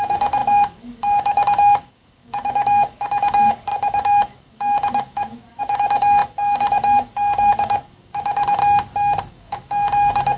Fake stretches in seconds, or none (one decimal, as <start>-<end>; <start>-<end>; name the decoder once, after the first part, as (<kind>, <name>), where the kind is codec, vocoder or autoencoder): 0.0-8.6 (codec, DAC); 9.3-10.4